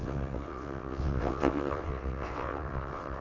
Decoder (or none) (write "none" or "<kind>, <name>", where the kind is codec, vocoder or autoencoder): vocoder, WaveNeXt